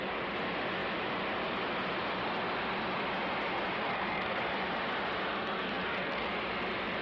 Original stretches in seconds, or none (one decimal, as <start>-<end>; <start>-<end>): 0.0-3.8; 4.4-5.3; 6.3-7.0